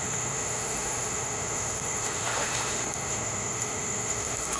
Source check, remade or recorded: remade